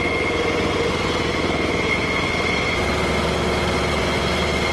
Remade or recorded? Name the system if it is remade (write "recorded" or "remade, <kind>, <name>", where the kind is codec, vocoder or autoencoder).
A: remade, vocoder, Vocos